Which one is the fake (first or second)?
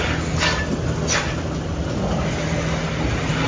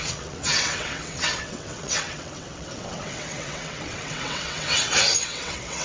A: second